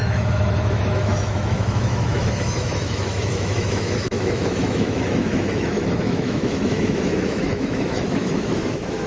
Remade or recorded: remade